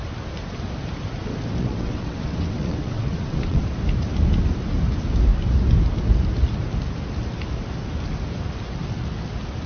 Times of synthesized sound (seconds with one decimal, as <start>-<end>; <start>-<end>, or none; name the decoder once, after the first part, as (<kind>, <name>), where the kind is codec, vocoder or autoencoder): 1.6-3.6 (vocoder, WaveNeXt)